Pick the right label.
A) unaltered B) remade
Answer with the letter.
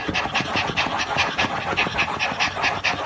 A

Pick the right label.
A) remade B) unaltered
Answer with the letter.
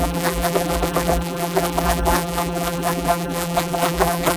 A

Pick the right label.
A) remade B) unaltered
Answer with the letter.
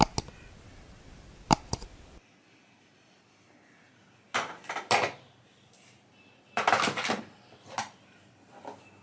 B